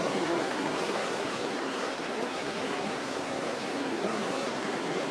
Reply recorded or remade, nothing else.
remade